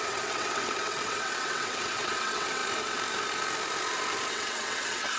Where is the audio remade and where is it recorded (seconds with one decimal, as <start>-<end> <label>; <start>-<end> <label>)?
0.0-2.6 remade; 2.6-4.3 recorded; 4.3-5.2 remade